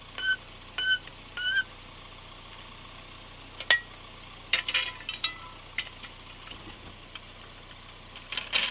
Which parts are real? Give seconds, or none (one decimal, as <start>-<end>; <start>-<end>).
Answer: 0.0-8.7